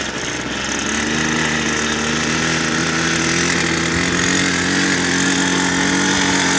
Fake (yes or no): no